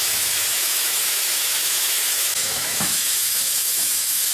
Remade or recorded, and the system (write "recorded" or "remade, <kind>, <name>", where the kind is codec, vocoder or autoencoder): remade, autoencoder, DAC-VAE